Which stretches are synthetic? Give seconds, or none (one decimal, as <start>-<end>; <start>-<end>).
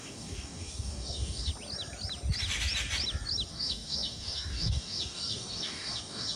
0.0-1.5; 3.5-6.4